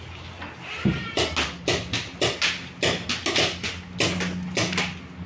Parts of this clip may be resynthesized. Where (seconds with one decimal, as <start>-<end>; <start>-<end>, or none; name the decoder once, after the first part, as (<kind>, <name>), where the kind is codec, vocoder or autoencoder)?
none